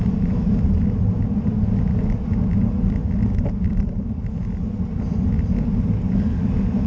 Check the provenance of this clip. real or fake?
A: real